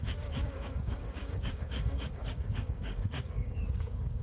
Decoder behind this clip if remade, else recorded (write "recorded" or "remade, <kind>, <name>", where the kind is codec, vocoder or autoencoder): remade, codec, DAC